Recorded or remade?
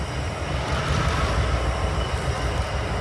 remade